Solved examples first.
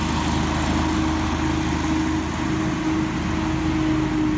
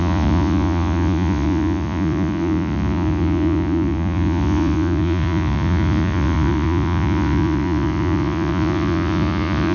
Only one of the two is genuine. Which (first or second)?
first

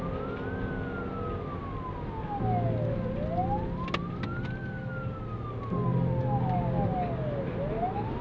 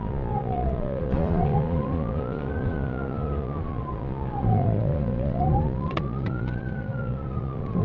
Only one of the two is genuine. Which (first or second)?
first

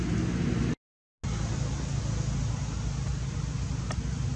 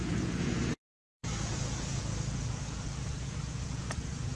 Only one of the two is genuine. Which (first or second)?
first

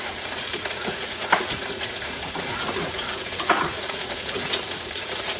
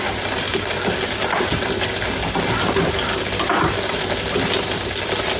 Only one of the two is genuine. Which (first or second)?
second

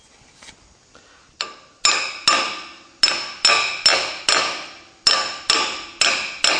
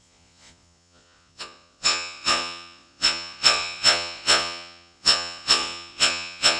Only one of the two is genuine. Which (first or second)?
first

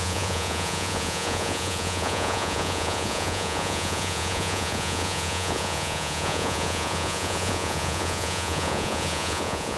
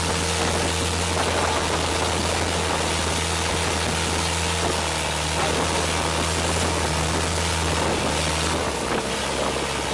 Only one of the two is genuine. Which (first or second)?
second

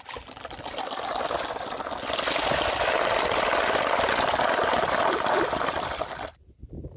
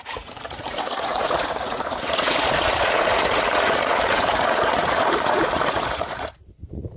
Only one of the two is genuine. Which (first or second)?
first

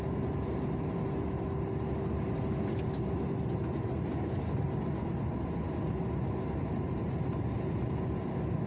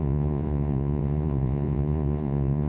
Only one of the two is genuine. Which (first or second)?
first